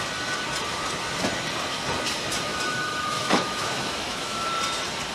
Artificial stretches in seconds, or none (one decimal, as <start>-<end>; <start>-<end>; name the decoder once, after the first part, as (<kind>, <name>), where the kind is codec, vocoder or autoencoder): 2.5-4.5 (autoencoder, DAC-VAE)